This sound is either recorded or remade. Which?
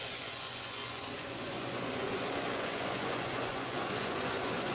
remade